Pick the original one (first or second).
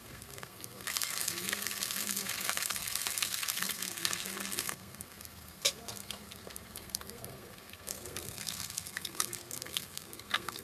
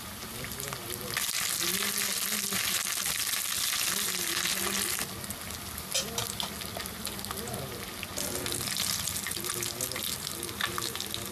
second